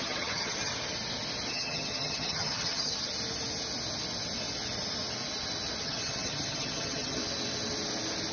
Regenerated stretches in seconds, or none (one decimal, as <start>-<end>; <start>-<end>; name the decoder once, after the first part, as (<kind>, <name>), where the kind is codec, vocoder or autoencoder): 0.0-0.7 (vocoder, HiFi-GAN); 1.5-3.1; 5.8-7.2